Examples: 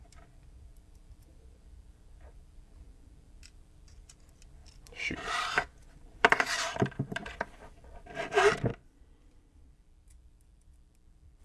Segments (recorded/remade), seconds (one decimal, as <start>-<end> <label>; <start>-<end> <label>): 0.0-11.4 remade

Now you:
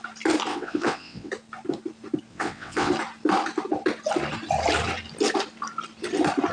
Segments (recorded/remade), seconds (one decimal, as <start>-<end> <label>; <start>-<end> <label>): 0.0-0.5 recorded; 0.5-1.3 remade; 1.3-2.3 recorded; 2.3-2.9 remade; 2.9-6.5 recorded

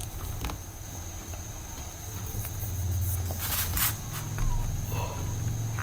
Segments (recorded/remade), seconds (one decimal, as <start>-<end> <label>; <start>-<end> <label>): 0.0-5.8 recorded

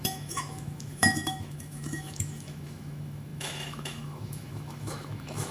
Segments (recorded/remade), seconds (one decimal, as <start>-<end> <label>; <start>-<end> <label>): 0.0-5.5 remade

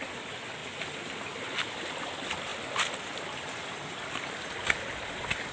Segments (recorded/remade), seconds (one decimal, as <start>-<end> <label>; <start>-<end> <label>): 0.0-5.5 recorded